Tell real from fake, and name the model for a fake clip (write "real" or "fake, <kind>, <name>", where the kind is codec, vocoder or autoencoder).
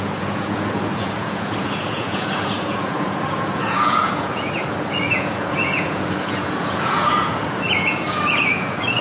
fake, vocoder, Vocos